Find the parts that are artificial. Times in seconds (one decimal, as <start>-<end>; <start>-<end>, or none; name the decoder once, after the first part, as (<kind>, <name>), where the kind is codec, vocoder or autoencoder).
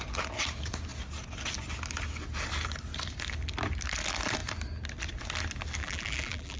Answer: 5.8-6.6 (vocoder, BigVGAN v2)